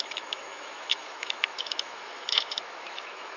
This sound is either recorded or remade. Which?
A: remade